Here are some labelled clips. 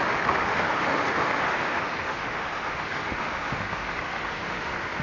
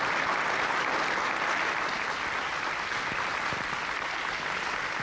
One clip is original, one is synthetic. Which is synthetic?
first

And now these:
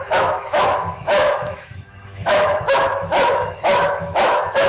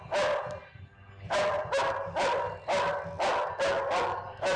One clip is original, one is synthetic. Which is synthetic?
first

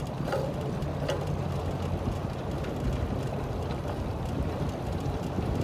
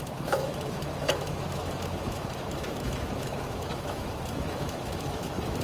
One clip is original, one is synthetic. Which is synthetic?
second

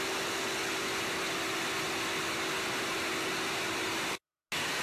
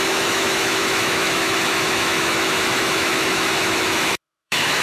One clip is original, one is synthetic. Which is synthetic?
second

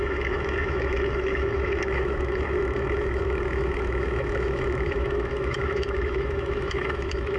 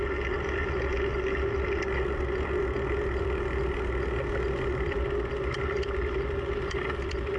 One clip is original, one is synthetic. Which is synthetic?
first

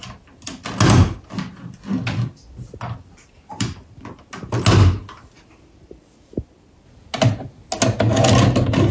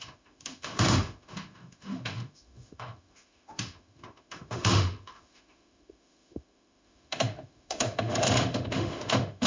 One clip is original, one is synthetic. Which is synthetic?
second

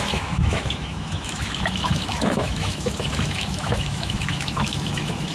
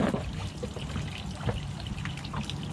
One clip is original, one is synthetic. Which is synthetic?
first